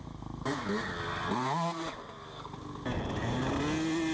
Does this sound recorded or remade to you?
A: recorded